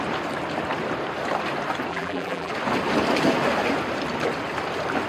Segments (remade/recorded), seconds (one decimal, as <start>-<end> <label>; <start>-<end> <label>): 0.0-1.9 recorded; 1.9-2.5 remade; 2.5-5.1 recorded